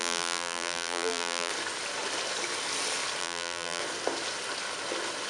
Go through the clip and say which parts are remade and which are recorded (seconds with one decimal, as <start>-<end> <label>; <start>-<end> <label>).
0.0-1.5 remade; 1.5-3.2 recorded; 3.2-3.8 remade; 3.8-5.3 recorded